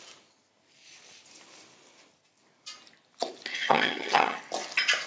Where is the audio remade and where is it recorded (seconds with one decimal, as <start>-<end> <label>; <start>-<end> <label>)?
0.0-3.5 recorded; 3.5-4.4 remade; 4.4-5.1 recorded